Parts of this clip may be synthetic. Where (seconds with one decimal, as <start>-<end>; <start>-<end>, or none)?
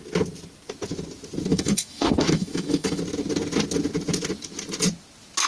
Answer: 1.5-3.0